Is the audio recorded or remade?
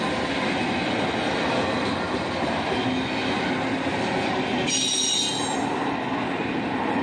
recorded